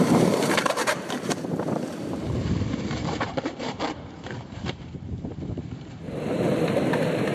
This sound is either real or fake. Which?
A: fake